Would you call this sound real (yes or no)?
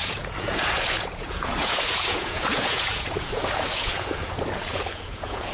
no